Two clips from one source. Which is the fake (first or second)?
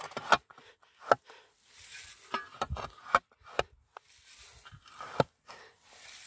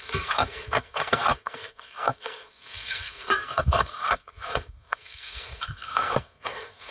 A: second